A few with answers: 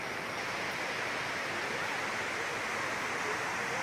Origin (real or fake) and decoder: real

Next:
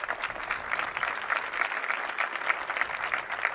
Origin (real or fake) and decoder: real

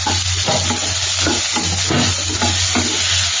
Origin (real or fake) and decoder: real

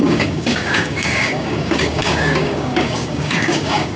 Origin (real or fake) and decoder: fake, codec, DAC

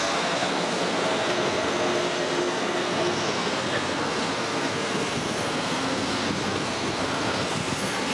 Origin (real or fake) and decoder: fake, codec, SNAC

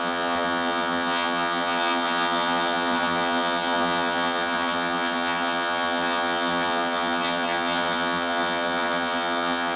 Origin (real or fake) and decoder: fake, vocoder, HiFi-GAN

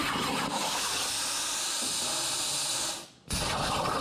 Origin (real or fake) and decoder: real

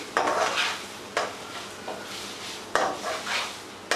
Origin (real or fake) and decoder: real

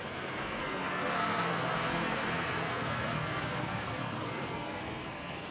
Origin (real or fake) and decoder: fake, codec, SNAC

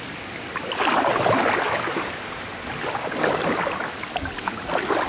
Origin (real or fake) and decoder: real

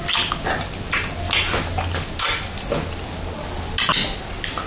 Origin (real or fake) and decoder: real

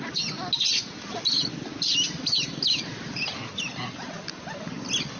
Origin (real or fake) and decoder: real